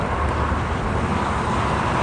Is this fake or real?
real